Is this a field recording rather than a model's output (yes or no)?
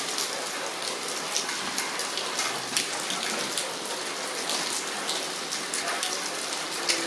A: yes